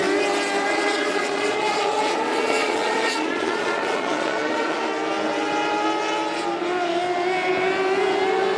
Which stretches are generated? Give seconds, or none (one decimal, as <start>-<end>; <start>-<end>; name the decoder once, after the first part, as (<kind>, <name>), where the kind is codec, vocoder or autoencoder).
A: 0.7-4.8 (vocoder, Vocos)

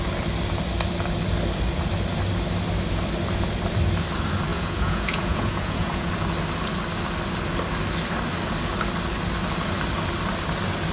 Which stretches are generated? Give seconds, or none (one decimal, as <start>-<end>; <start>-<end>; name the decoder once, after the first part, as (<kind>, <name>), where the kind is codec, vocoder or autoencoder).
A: 4.5-6.1 (vocoder, Vocos)

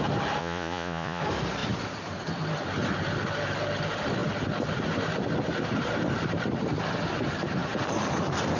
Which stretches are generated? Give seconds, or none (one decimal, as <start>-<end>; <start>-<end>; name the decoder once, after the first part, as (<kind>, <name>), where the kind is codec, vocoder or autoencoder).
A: 0.4-1.2 (vocoder, Vocos)

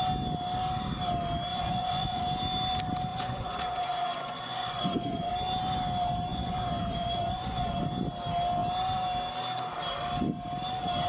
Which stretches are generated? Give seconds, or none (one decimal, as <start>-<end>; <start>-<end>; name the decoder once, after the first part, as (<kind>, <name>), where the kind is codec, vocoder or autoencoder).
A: 1.5-2.2 (vocoder, Vocos); 3.1-5.3; 6.3-7.8

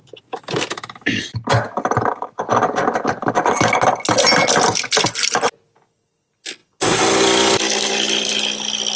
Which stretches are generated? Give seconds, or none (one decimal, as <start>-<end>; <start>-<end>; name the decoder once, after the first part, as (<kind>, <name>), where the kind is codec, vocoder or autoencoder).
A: none

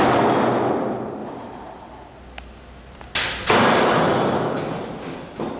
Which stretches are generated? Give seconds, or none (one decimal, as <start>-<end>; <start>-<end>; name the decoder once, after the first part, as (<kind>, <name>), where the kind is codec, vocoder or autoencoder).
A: none